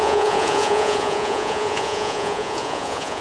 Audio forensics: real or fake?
fake